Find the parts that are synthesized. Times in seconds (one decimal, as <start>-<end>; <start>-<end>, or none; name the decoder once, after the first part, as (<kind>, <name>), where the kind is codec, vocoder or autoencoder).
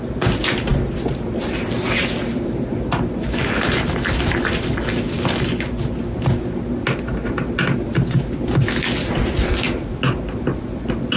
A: none